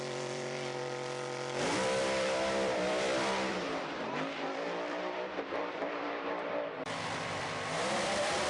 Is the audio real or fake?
fake